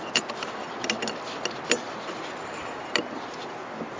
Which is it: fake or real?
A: real